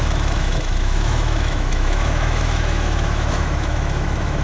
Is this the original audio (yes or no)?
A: no